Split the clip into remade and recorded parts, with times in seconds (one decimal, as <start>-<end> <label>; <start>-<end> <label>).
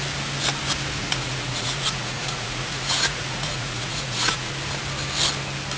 0.0-1.0 recorded; 1.0-4.5 remade; 4.5-5.8 recorded